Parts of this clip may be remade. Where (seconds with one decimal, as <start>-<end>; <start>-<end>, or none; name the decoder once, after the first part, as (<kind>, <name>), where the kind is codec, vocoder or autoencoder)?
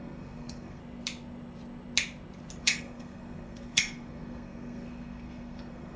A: 0.0-0.8 (codec, SNAC); 2.6-6.0